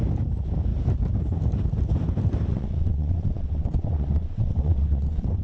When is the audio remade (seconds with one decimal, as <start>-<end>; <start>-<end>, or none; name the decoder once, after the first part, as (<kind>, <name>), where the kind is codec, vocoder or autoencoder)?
2.5-5.4 (vocoder, WaveNeXt)